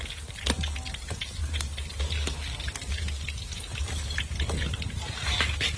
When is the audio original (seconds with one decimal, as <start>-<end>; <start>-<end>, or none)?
0.0-5.8